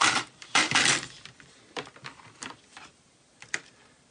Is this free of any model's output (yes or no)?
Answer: no